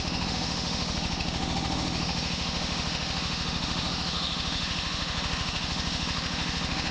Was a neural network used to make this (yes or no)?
yes